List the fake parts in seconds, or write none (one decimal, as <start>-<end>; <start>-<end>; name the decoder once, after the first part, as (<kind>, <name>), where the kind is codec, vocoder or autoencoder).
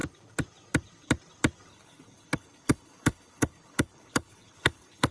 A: 1.7-5.1 (codec, HILCodec)